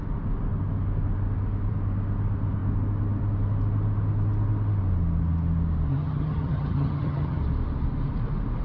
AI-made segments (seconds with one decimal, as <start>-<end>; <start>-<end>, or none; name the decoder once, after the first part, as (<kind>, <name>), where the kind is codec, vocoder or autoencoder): 5.9-7.4 (vocoder, HiFi-GAN)